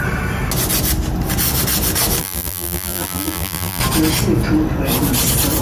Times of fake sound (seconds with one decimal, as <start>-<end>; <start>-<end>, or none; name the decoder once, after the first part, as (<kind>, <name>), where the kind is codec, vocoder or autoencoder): 2.2-3.8 (vocoder, BigVGAN v2)